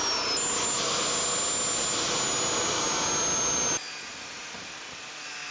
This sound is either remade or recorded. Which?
recorded